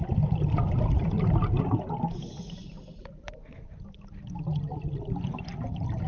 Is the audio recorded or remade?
recorded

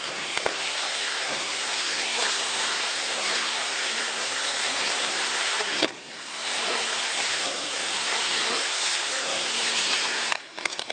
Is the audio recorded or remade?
remade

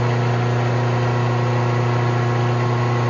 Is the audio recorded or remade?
recorded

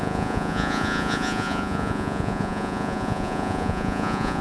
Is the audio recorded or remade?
remade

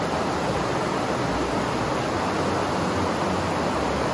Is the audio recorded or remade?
recorded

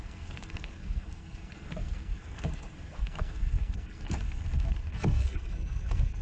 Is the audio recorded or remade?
remade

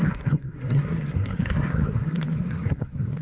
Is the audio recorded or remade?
remade